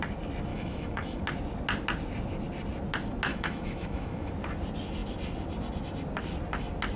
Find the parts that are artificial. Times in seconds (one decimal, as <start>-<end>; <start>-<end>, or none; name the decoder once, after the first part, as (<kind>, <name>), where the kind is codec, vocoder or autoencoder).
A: 0.5-1.2 (autoencoder, DAC-VAE); 3.3-4.3